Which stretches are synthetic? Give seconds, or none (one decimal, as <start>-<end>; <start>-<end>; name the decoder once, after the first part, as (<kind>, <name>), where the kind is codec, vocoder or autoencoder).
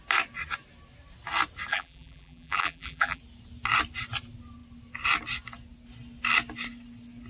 1.7-3.2 (vocoder, BigVGAN v2)